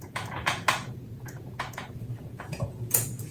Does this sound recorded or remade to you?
remade